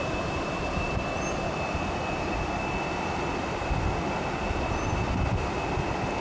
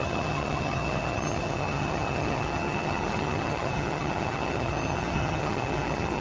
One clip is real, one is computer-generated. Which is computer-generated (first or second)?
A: second